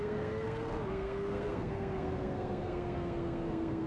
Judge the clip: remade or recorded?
remade